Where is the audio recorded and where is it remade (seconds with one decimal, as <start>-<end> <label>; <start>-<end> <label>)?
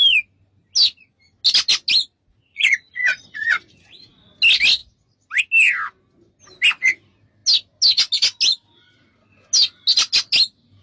0.0-2.0 recorded; 2.0-4.3 remade; 4.3-10.8 recorded